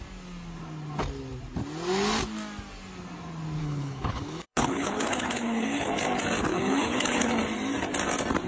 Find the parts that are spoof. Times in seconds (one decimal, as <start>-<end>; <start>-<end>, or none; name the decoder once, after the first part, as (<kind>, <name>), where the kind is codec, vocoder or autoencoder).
3.6-5.9 (codec, HILCodec); 6.5-7.3